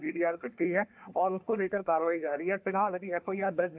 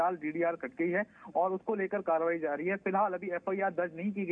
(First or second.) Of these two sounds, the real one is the second